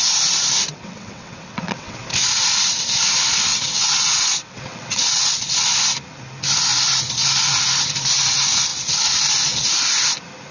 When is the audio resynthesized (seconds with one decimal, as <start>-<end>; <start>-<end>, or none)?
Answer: 0.7-2.0; 3.5-5.4